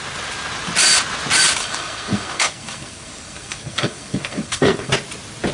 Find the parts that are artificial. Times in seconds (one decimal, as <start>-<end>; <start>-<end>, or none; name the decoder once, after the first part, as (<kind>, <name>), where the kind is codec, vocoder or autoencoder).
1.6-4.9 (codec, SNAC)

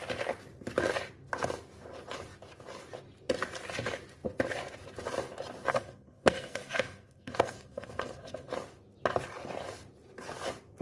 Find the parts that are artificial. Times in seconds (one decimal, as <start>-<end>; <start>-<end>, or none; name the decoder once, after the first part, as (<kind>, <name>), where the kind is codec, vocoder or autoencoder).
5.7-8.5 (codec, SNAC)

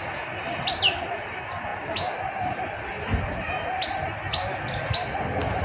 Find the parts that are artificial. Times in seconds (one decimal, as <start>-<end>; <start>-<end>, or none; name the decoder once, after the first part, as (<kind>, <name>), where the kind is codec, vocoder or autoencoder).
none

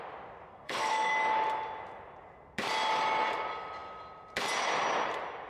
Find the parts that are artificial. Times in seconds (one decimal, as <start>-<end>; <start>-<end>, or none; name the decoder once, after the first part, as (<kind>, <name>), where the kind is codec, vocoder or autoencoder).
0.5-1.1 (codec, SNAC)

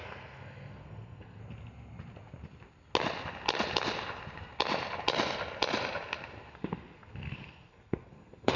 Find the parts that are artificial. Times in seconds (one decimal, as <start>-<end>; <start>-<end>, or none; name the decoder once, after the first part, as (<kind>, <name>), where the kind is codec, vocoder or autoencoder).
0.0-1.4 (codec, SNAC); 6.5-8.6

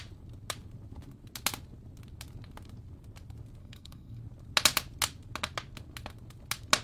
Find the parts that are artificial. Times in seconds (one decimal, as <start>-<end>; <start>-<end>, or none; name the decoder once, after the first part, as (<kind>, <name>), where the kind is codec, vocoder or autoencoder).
3.6-4.2 (codec, SNAC)